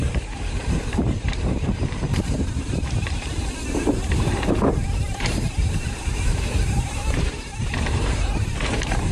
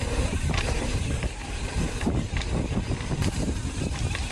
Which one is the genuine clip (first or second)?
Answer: second